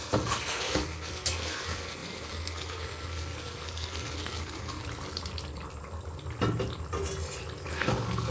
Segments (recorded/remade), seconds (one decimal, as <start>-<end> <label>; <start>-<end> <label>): 0.0-4.8 remade; 4.8-7.7 recorded; 7.7-8.3 remade